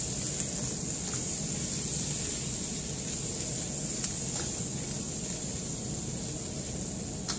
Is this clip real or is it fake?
real